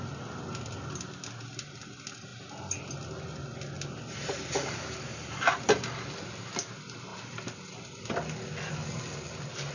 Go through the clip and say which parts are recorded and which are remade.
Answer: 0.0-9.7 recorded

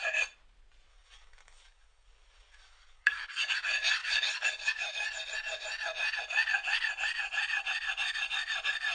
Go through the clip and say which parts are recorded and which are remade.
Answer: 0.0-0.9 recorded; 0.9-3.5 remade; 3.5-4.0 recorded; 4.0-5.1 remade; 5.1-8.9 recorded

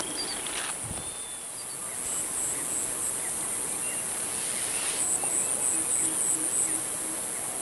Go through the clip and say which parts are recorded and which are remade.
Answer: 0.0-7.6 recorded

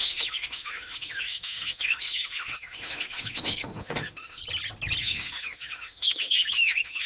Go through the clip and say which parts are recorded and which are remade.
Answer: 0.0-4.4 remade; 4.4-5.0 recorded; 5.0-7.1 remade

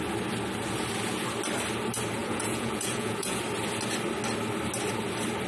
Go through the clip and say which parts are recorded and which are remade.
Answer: 0.0-2.2 recorded; 2.2-3.4 remade; 3.4-5.5 recorded

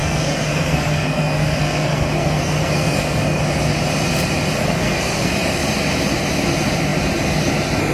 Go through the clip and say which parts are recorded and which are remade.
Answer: 0.0-3.4 remade; 3.4-4.6 recorded; 4.6-5.3 remade; 5.3-7.9 recorded